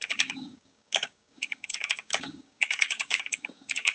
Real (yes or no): no